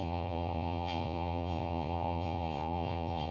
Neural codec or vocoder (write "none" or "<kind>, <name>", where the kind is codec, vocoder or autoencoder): vocoder, Vocos